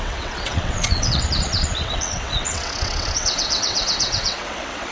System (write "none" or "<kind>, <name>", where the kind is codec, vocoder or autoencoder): vocoder, WaveNeXt